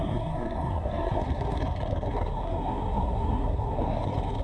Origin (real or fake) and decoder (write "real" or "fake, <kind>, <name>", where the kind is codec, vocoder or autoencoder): fake, codec, SNAC